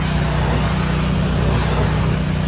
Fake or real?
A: real